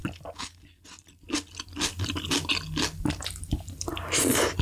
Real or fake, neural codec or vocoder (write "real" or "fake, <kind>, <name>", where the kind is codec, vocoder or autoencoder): real